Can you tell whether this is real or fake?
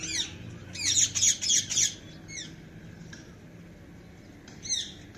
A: real